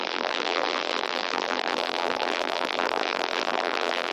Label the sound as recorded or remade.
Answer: remade